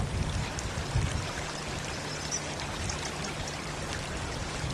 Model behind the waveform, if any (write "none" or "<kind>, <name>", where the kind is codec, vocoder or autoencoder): none